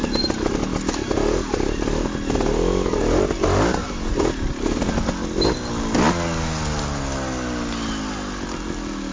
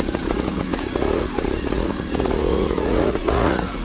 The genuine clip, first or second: first